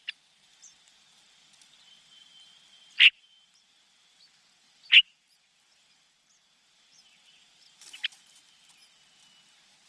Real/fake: real